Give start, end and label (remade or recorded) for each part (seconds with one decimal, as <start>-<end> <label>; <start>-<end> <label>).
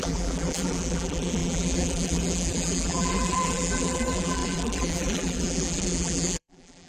0.0-6.9 remade